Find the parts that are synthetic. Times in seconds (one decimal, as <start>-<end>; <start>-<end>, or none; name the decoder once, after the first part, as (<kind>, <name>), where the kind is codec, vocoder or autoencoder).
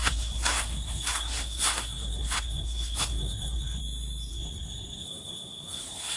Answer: 0.0-3.8 (codec, SNAC); 4.3-6.2